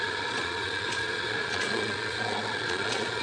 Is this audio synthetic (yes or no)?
yes